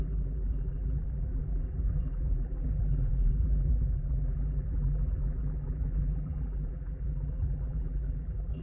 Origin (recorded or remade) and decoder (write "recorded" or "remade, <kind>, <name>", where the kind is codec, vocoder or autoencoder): remade, vocoder, BigVGAN v2